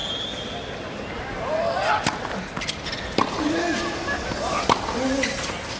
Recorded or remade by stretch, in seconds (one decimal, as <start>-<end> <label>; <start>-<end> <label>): 0.0-5.8 recorded